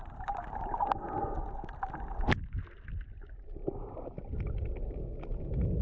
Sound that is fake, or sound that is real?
real